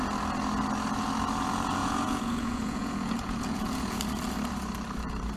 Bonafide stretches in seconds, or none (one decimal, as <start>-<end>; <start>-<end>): 0.0-1.8; 4.0-5.4